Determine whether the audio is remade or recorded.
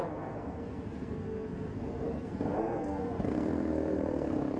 remade